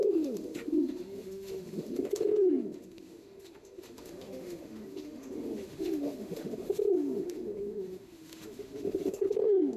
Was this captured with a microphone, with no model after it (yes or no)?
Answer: no